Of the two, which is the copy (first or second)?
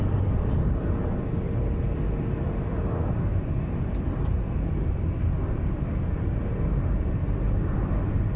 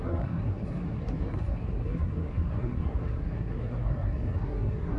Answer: second